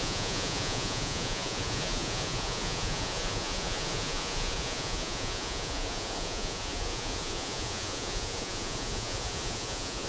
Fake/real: fake